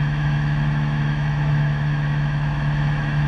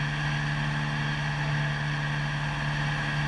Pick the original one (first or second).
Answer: second